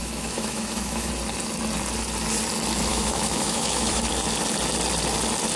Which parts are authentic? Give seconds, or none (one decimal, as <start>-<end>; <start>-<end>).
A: 1.1-2.9; 4.1-5.6